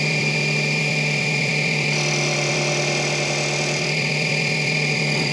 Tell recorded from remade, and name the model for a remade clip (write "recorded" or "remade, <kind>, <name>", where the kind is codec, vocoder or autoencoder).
remade, vocoder, BigVGAN v2